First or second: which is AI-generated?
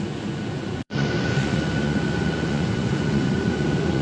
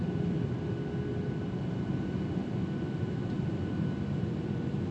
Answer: first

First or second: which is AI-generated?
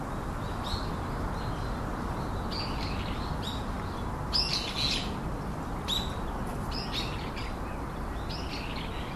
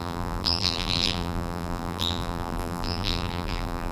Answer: second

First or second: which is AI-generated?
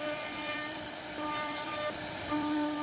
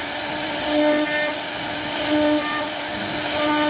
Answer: first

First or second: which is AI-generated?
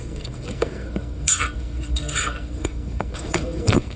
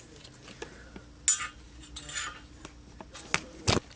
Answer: first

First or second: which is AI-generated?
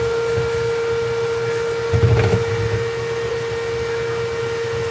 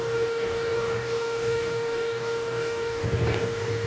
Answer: second